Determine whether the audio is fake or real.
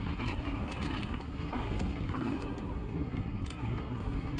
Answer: fake